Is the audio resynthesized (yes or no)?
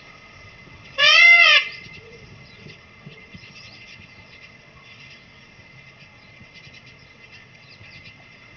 yes